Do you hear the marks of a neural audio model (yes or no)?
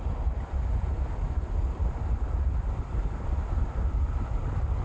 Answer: no